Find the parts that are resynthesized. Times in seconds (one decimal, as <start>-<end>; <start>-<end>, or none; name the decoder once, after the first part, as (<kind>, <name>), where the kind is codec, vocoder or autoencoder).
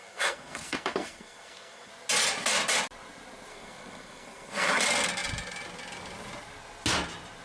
0.0-1.9 (codec, SNAC); 3.5-4.7